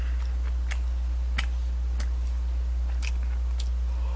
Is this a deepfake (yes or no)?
no